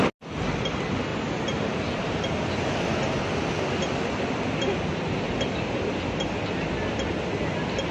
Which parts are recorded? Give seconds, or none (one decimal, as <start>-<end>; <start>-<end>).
0.0-1.1; 1.9-7.9